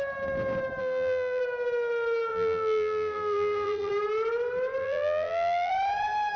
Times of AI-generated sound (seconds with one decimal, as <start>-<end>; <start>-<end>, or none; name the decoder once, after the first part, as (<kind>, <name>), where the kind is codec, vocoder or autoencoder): 0.8-1.4 (vocoder, BigVGAN v2); 2.3-3.9; 4.8-5.7